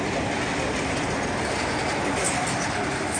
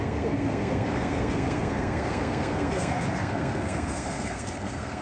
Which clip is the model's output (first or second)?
second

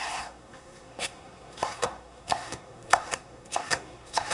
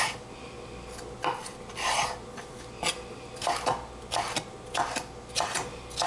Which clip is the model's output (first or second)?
first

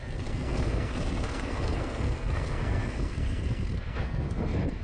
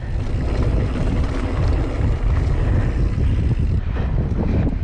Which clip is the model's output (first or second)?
first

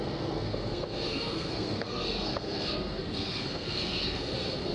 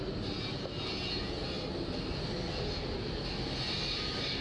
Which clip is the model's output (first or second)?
first